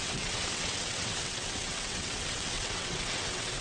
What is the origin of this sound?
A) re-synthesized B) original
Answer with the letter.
A